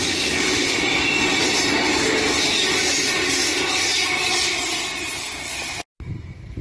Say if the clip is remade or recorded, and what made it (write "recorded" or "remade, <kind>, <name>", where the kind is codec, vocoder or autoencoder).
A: recorded